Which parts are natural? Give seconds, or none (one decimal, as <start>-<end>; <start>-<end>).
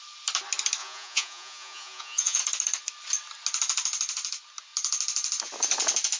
0.0-0.8; 2.4-6.2